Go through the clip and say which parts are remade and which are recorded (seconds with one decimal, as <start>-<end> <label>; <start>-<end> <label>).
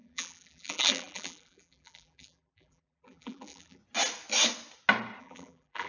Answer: 0.0-3.8 remade; 3.8-5.2 recorded; 5.2-5.9 remade